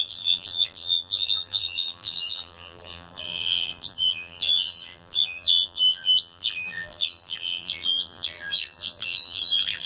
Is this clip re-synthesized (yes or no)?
yes